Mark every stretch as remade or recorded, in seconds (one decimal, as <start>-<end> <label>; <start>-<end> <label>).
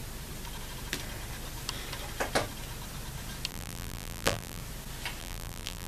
0.0-3.5 recorded; 3.5-4.6 remade; 4.6-5.2 recorded; 5.2-5.9 remade